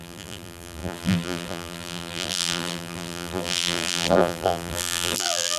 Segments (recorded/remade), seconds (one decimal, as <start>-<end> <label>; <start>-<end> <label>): 0.0-5.6 remade